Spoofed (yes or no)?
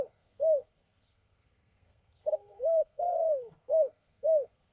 yes